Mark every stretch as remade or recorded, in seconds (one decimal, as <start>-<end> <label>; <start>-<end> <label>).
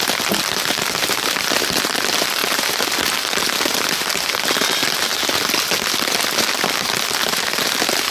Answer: 0.0-8.1 recorded